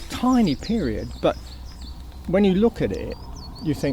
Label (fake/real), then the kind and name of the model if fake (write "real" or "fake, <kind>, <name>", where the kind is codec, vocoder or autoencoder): real